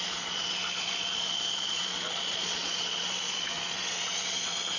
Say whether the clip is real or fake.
fake